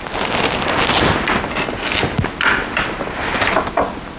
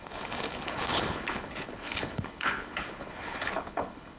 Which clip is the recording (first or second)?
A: first